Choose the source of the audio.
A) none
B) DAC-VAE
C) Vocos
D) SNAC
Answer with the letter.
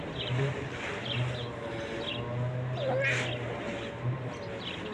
A